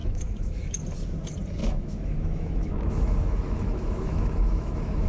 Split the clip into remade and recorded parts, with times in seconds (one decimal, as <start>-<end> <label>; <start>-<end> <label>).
0.0-0.8 remade; 0.8-1.6 recorded; 1.6-5.1 remade